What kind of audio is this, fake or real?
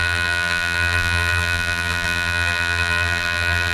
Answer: fake